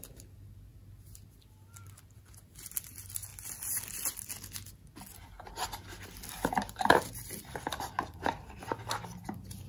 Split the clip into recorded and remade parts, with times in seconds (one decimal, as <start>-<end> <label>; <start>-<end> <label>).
0.0-0.7 remade; 0.7-2.5 recorded; 2.5-3.3 remade; 3.3-5.5 recorded; 5.5-9.7 remade